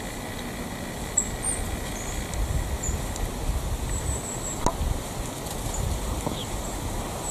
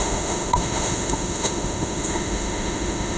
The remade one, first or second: second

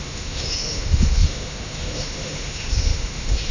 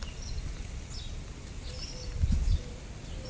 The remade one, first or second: first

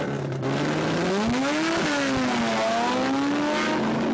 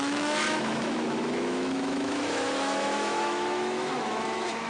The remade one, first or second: second